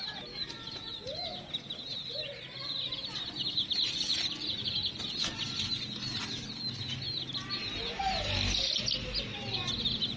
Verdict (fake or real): real